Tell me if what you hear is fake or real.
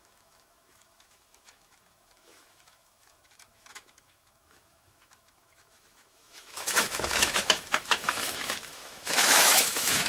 fake